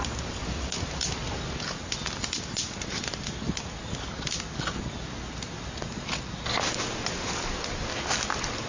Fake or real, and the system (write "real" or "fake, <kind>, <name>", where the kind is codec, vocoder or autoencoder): real